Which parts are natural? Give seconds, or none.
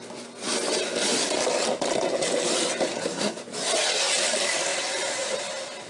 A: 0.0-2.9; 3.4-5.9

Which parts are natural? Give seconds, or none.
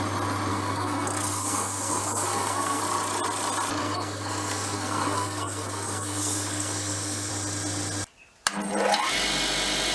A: 0.0-0.5; 2.8-3.8; 7.3-9.9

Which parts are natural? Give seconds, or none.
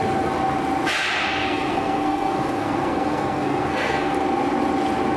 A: 0.0-1.3; 4.1-5.2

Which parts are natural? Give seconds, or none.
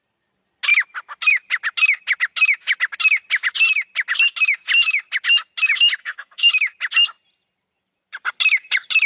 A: 0.0-6.0; 6.5-9.1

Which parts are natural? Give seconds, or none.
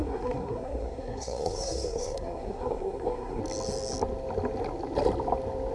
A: 3.4-5.7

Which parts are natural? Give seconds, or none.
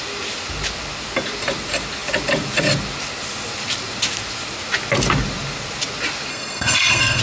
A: 0.0-6.3